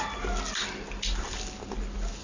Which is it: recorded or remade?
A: recorded